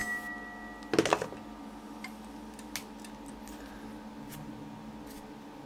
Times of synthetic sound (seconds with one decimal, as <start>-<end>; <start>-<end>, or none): none